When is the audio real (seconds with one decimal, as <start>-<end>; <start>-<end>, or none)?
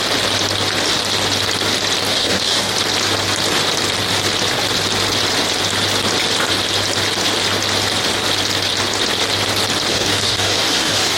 0.0-2.1; 2.7-9.9